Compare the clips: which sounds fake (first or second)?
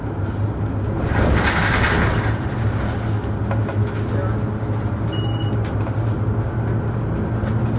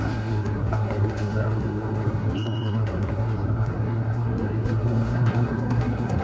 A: second